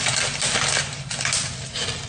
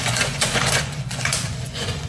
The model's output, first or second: second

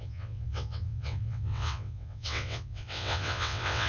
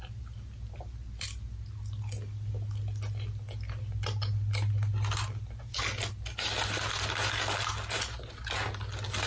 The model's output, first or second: first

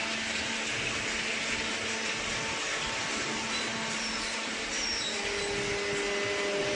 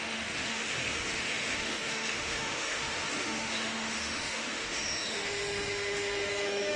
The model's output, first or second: second